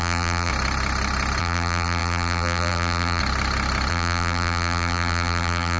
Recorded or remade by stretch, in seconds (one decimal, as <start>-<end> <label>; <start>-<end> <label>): 0.0-0.5 remade; 0.5-1.4 recorded; 1.4-3.2 remade; 3.2-3.9 recorded; 3.9-5.8 remade